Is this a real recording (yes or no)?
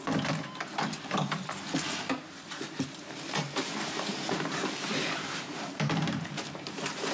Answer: no